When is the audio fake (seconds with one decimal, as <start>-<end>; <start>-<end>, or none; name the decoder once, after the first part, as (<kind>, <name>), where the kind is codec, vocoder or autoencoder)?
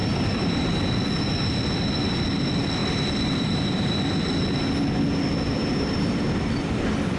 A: 0.0-0.7 (vocoder, BigVGAN v2); 2.8-3.9; 5.6-6.3